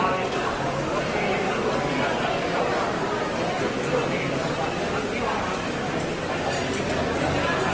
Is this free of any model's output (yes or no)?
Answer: yes